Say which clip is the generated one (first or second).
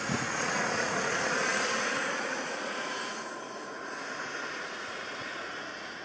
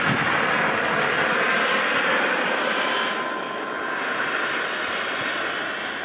first